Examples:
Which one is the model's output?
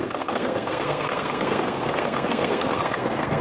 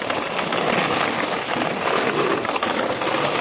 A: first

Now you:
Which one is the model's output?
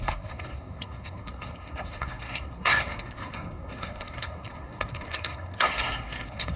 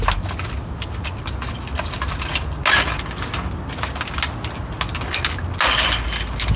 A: first